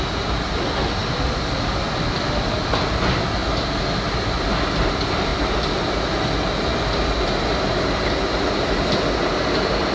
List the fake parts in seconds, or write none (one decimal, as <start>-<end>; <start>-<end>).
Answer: none